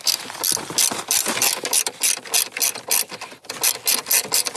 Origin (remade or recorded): recorded